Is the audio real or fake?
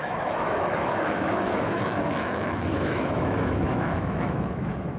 fake